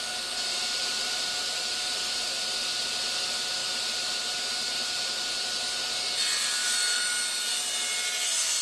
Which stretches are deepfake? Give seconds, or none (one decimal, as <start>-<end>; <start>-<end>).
0.5-2.1; 3.6-5.5; 6.6-7.1

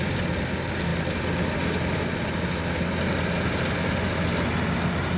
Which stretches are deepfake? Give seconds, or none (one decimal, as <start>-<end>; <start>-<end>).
none